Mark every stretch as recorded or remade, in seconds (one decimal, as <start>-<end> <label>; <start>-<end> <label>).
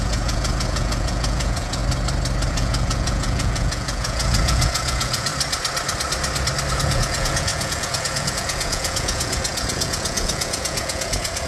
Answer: 0.0-1.8 remade; 1.8-2.5 recorded; 2.5-5.3 remade; 5.3-6.7 recorded; 6.7-11.5 remade